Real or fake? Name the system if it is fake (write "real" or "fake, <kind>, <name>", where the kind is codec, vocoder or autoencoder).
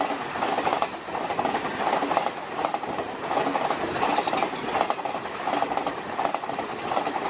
real